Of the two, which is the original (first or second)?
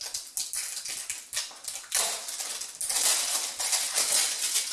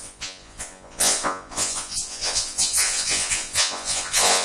first